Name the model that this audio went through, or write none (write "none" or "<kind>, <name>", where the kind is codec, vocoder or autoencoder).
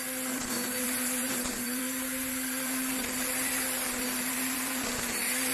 vocoder, BigVGAN v2